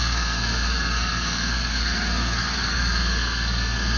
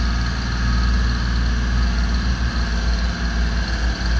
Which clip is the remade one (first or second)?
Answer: first